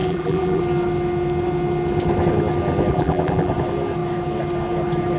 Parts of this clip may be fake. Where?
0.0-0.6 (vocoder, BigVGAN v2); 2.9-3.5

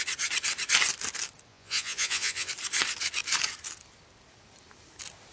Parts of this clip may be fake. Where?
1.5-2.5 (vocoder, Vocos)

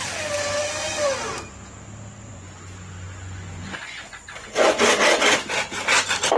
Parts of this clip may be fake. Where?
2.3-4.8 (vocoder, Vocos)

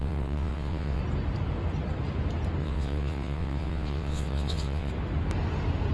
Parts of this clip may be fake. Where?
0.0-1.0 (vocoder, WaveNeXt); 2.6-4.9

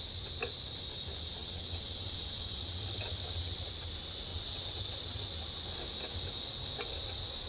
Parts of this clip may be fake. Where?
1.4-3.7 (vocoder, WaveNeXt); 4.3-5.2

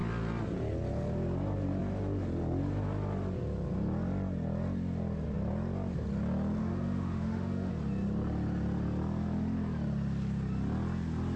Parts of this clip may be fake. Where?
6.6-7.7 (autoencoder, DAC-VAE)

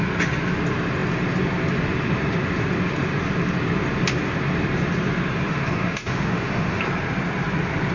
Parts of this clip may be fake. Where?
5.5-6.8 (autoencoder, DAC-VAE)